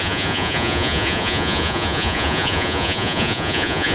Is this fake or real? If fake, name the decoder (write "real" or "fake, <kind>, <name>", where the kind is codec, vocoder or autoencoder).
fake, vocoder, Vocos